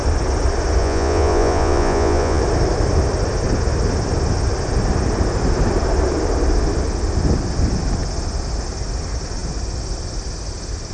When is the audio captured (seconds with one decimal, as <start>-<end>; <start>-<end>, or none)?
0.0-0.8; 2.4-10.9